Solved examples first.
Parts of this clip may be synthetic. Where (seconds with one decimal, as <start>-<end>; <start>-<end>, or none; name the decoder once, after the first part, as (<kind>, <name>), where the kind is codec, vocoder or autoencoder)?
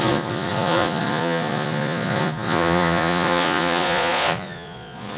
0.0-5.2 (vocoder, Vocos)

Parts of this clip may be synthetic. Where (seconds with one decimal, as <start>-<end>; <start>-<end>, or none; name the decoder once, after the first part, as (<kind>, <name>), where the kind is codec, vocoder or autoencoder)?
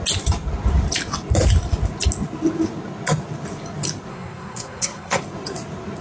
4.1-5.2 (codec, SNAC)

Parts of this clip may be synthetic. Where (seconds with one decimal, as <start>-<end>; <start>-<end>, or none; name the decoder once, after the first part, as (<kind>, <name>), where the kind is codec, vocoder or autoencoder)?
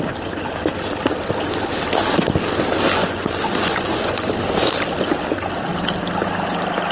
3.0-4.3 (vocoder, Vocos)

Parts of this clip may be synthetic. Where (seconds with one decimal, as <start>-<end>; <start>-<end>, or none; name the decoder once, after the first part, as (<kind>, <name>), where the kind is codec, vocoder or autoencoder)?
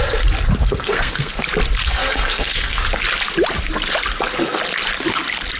0.6-1.4 (codec, SNAC); 1.8-2.8